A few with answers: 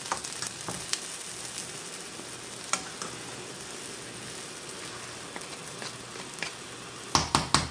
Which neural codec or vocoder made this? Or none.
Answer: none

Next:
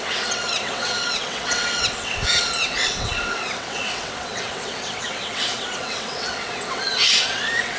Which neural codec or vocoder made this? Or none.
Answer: vocoder, WaveNeXt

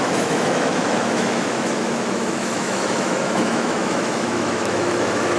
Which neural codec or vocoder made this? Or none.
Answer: autoencoder, DAC-VAE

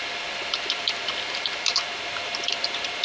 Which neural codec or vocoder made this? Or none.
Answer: none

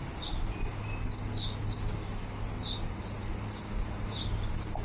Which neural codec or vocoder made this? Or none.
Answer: none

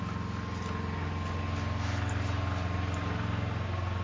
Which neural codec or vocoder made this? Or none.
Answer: none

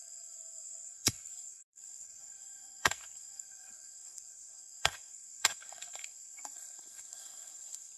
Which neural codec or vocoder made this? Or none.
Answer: codec, SNAC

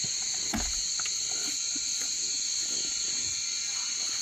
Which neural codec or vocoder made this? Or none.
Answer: none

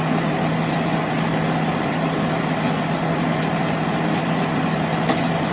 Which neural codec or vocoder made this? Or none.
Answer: none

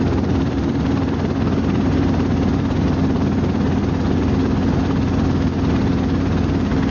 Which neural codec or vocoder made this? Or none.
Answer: none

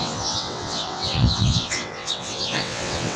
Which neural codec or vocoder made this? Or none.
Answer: vocoder, WaveNeXt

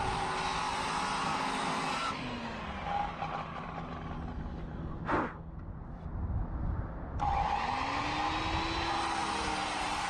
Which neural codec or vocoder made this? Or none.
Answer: none